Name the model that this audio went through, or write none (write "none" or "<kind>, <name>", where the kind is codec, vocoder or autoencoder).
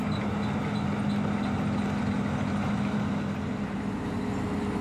none